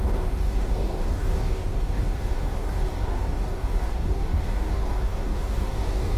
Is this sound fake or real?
fake